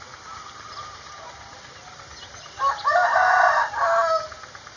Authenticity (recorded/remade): recorded